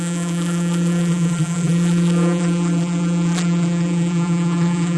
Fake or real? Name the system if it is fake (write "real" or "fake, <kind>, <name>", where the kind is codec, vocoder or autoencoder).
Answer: fake, vocoder, BigVGAN v2